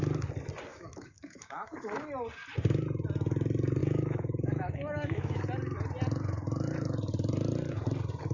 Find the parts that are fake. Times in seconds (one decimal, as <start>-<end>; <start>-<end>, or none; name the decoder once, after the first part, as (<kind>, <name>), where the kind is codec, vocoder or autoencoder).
0.7-2.1 (autoencoder, DAC-VAE); 3.8-5.4